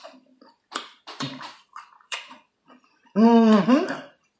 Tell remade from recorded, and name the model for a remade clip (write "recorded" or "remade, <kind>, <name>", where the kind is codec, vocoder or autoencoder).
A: remade, vocoder, BigVGAN v2